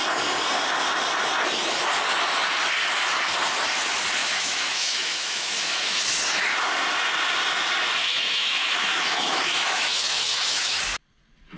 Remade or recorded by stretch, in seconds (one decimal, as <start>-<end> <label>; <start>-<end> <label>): 0.0-4.2 recorded; 4.2-6.0 remade; 6.0-8.0 recorded; 8.0-10.8 remade; 10.8-11.6 recorded